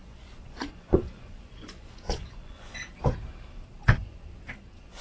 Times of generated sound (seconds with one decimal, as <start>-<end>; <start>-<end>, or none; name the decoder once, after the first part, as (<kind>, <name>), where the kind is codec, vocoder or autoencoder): 0.0-2.9 (vocoder, Vocos); 4.0-5.0